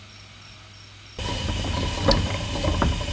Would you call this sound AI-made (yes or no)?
no